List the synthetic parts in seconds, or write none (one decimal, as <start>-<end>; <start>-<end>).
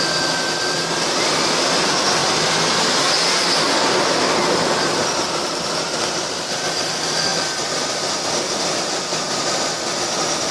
none